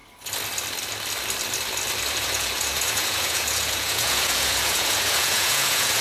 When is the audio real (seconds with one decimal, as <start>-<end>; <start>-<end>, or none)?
0.0-2.1